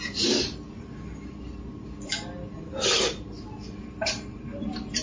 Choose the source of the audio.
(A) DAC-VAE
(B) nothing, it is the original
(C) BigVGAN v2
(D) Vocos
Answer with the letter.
C